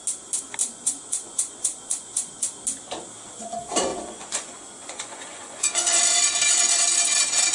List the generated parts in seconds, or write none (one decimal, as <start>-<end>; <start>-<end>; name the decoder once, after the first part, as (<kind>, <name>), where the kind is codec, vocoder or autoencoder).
0.6-2.5 (vocoder, Vocos); 3.9-6.0